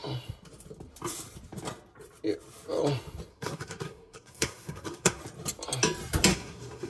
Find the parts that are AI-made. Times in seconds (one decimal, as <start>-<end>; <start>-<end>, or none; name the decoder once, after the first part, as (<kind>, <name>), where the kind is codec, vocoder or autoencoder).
3.3-5.2 (codec, SNAC); 6.3-6.9